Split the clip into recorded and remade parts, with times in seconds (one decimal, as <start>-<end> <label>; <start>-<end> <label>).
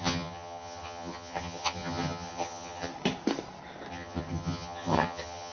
0.0-2.9 remade; 2.9-3.9 recorded; 3.9-5.5 remade